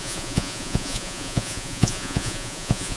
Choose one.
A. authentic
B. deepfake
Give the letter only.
B